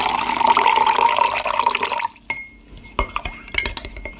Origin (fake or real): real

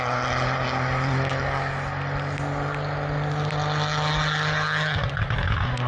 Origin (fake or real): real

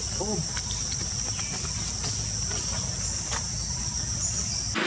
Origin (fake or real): real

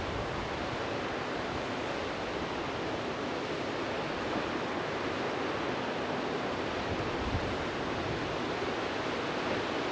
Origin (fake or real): real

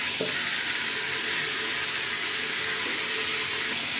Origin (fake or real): real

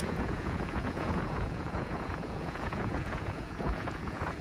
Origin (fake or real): fake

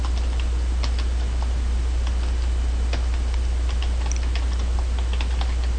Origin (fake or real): real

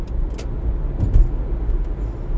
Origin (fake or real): real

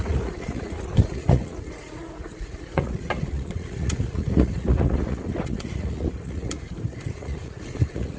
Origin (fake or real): fake